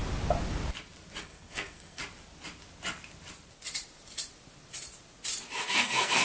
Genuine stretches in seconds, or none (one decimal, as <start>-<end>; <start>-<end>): 0.0-1.2; 2.0-5.7